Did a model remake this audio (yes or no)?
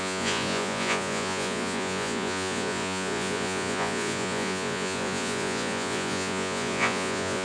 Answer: yes